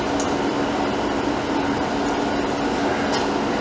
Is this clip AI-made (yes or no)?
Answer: no